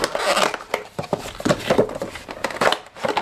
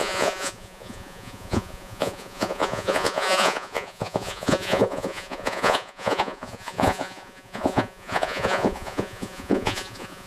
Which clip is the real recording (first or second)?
first